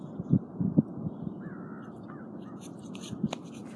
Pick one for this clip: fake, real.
real